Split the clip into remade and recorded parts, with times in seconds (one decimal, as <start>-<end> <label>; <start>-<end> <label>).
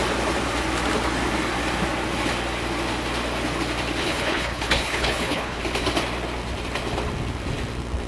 0.0-4.0 recorded; 4.0-5.6 remade; 5.6-8.1 recorded